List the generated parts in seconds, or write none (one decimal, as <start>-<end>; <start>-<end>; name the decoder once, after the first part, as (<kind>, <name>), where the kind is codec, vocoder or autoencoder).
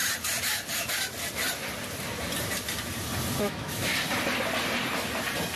3.4-3.9 (autoencoder, DAC-VAE)